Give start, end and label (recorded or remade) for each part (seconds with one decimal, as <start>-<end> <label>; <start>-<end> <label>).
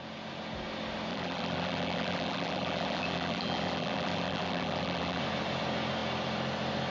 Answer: 0.0-1.1 recorded; 1.1-5.2 remade; 5.2-6.9 recorded